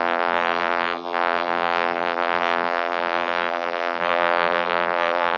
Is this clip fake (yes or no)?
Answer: yes